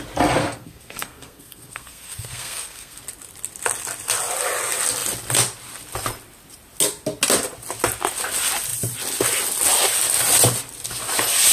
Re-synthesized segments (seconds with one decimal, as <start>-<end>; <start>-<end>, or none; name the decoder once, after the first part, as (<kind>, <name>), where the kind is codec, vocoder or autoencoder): 0.4-3.0 (codec, SNAC)